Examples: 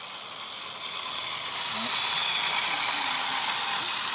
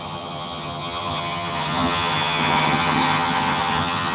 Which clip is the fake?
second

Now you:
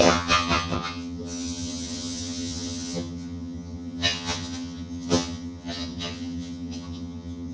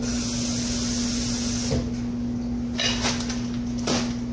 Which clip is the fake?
first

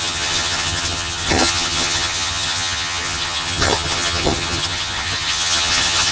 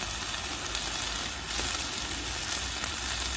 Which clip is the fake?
first